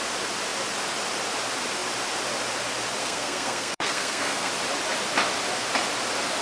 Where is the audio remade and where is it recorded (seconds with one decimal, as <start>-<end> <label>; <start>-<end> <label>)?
0.0-3.0 recorded; 3.0-4.5 remade; 4.5-6.4 recorded